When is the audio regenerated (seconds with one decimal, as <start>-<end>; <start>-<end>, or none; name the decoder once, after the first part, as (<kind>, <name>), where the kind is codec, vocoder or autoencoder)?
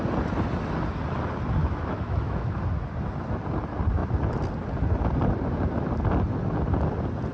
1.6-2.7 (autoencoder, DAC-VAE)